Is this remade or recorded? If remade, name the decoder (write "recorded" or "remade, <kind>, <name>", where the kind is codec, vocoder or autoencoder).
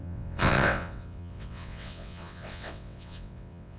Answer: remade, vocoder, WaveNeXt